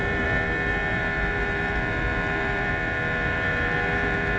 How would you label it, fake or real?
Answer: fake